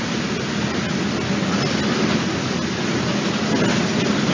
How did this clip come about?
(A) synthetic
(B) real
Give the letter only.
B